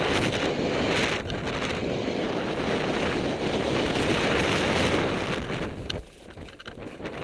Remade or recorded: recorded